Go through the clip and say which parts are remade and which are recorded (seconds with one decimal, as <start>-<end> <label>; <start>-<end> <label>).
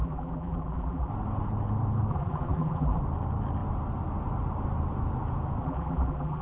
0.0-1.1 remade; 1.1-2.1 recorded; 2.1-3.0 remade; 3.0-5.6 recorded; 5.6-6.4 remade